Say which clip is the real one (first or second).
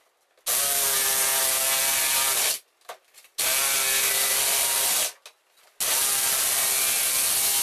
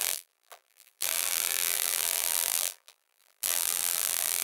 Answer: first